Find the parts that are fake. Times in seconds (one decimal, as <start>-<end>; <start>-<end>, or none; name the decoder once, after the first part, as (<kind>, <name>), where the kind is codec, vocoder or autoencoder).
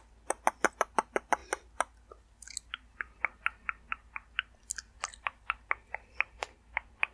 none